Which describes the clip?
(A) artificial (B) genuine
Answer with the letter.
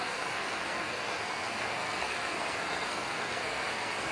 A